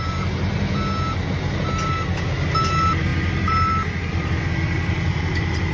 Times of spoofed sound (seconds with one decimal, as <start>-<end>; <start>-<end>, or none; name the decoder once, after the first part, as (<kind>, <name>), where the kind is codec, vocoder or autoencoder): none

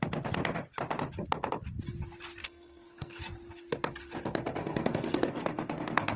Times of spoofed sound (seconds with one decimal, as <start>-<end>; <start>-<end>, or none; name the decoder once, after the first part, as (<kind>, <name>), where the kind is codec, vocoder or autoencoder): 2.4-3.2 (codec, SNAC); 4.6-6.2

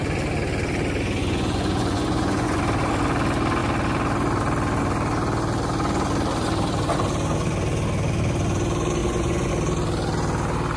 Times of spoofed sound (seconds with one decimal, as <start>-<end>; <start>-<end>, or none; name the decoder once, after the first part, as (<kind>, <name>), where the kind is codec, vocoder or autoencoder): 1.2-2.6 (vocoder, Vocos); 9.0-9.5